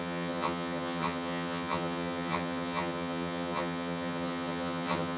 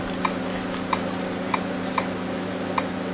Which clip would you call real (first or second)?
second